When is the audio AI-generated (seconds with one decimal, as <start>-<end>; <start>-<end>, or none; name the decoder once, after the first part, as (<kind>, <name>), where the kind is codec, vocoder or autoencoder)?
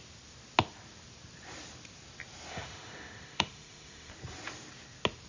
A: 2.5-4.1 (autoencoder, DAC-VAE)